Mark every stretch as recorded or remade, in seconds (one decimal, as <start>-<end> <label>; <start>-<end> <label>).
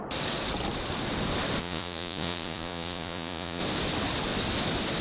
0.0-1.6 recorded; 1.6-3.6 remade; 3.6-5.0 recorded